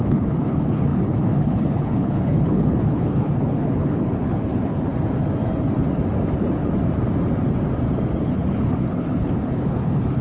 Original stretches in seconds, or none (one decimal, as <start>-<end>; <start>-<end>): 4.9-8.2

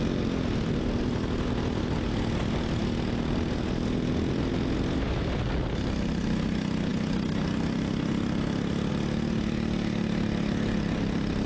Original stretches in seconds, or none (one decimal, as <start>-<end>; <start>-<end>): 0.0-11.5

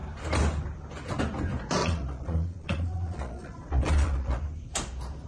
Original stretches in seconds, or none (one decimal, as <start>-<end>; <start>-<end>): 0.0-1.8; 4.4-5.3

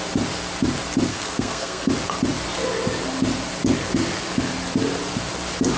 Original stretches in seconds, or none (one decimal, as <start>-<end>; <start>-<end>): 0.0-1.1; 1.9-5.8

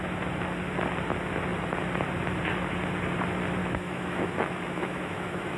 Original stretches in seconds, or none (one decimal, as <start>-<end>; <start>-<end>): 0.0-3.6

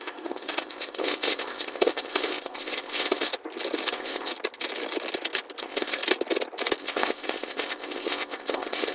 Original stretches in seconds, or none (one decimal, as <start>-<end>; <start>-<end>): 3.3-3.9; 4.3-5.6; 6.0-6.8

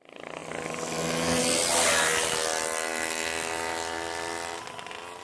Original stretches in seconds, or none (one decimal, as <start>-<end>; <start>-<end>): 0.0-5.2

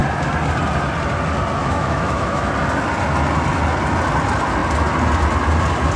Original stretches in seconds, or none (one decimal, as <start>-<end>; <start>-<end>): 0.0-1.6; 2.5-6.0